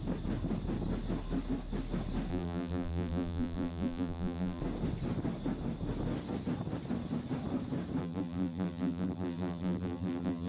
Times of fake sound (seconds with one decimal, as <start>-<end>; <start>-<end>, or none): 2.3-4.6; 8.0-10.5